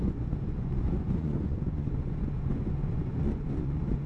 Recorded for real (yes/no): no